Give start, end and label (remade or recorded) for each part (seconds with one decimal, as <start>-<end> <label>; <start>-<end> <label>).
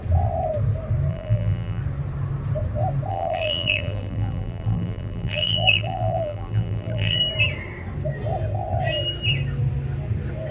0.0-1.1 recorded; 1.1-1.8 remade; 1.8-3.1 recorded; 3.1-7.2 remade; 7.2-10.5 recorded